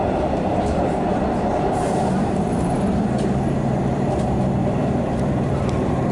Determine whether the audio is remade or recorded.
remade